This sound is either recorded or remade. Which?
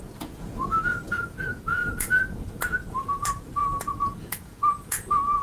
remade